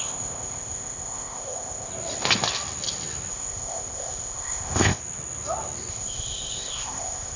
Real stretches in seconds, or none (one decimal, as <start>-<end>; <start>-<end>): 1.9-3.3; 5.0-5.9